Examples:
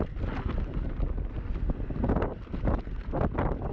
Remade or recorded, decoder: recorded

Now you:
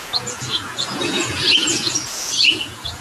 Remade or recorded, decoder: remade, vocoder, Vocos